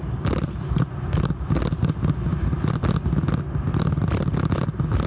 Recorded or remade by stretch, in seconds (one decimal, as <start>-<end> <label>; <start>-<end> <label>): 0.0-5.1 recorded